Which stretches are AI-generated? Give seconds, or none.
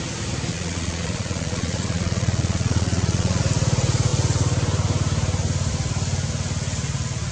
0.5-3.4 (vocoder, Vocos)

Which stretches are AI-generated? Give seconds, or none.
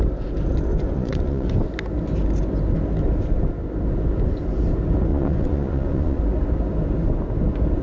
0.7-1.5 (vocoder, Vocos); 5.1-6.2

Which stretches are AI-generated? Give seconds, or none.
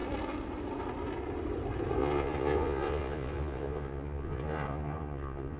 2.0-5.6 (vocoder, Vocos)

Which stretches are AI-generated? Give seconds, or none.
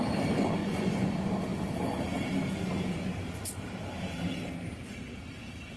0.6-1.1 (vocoder, Vocos)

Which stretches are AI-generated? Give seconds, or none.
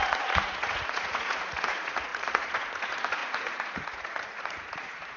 0.0-5.2 (vocoder, Vocos)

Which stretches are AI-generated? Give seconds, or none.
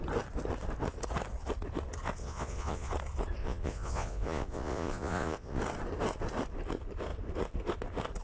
2.2-2.9 (vocoder, Vocos); 3.4-5.6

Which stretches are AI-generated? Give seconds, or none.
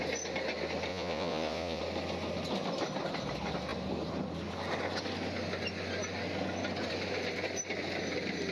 0.9-1.8 (vocoder, Vocos)